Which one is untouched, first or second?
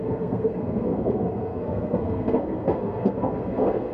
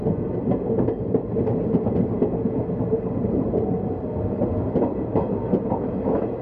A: second